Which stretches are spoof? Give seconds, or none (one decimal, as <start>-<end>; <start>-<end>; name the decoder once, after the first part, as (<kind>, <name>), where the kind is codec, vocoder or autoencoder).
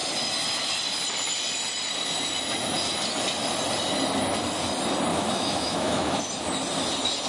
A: 5.1-6.2 (autoencoder, DAC-VAE)